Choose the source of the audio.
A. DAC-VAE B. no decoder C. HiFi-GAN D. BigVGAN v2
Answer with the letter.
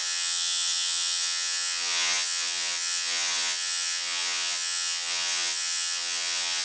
C